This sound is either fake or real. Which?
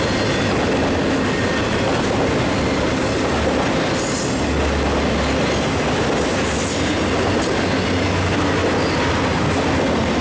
real